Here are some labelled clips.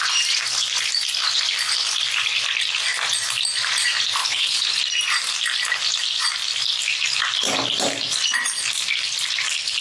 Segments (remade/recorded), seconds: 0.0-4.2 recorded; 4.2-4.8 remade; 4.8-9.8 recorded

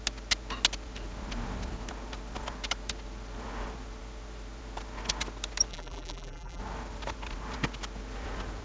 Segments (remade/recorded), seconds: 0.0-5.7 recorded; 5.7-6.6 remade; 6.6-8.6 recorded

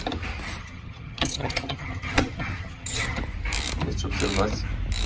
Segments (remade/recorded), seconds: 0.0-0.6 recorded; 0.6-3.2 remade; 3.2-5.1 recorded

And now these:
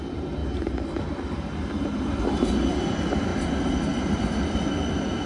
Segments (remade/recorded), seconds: 0.0-0.4 remade; 0.4-2.2 recorded; 2.2-5.3 remade

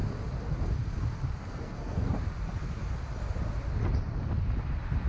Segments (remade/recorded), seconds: 0.0-1.4 recorded; 1.4-2.1 remade; 2.1-5.1 recorded